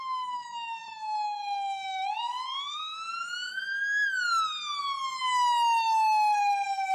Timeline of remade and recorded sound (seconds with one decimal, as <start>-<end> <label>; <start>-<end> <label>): 0.0-3.7 remade; 3.7-6.4 recorded; 6.4-6.9 remade